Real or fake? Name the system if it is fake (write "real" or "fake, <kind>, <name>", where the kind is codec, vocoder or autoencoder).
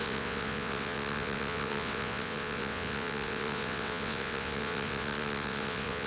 fake, vocoder, WaveNeXt